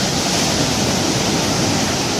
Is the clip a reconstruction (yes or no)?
yes